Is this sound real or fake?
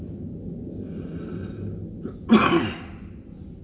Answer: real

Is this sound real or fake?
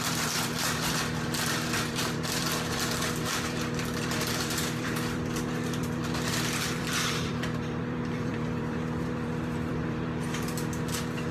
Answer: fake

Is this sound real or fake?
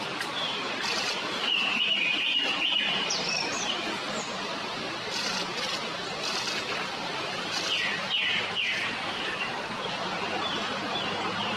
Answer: fake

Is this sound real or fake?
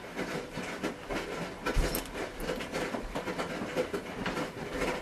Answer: real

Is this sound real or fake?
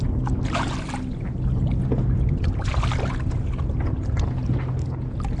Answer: real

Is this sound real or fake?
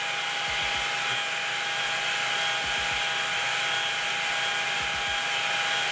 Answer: real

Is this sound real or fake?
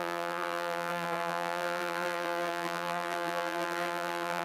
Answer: fake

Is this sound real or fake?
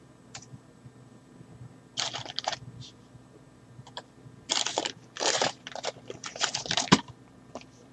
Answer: fake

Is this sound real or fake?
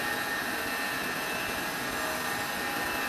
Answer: real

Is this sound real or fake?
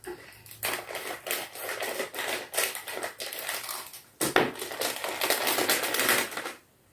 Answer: real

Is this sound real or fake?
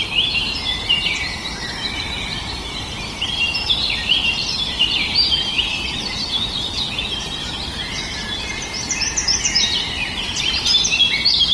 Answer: fake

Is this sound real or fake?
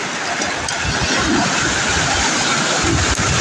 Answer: real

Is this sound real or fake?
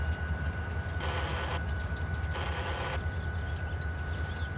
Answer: real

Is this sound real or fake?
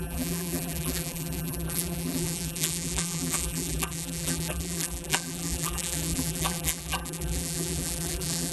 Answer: fake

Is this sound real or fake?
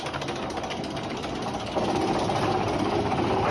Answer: real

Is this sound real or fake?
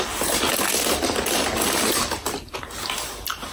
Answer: real